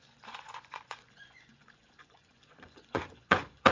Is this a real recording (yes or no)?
no